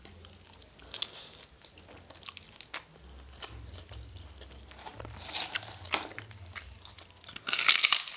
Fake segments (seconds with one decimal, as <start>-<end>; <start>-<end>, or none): 3.3-8.2